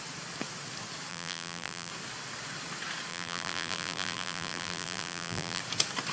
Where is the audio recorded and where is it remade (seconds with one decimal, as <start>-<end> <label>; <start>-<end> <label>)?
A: 0.0-1.1 recorded; 1.1-1.9 remade; 1.9-3.1 recorded; 3.1-5.6 remade; 5.6-6.1 recorded